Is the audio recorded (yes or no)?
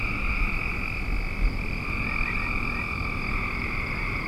yes